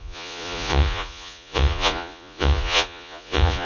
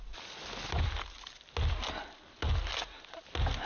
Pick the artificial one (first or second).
first